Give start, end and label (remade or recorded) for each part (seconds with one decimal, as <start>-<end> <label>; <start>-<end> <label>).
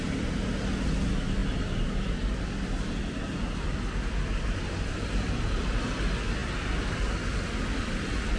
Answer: 0.0-8.4 recorded